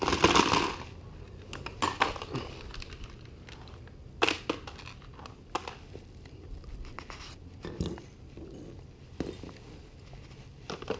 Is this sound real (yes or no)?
yes